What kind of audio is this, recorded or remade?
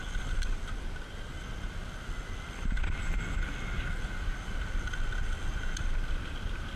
recorded